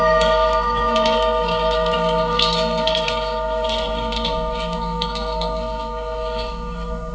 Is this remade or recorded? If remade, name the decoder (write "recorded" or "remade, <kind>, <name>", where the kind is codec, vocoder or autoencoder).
remade, codec, SNAC